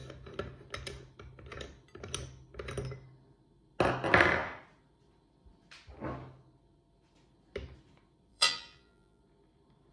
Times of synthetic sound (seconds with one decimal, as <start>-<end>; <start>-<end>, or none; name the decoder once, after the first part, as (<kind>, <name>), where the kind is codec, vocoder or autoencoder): 8.3-9.2 (vocoder, BigVGAN v2)